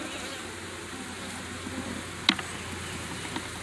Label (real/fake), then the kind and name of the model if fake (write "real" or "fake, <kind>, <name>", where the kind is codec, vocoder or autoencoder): real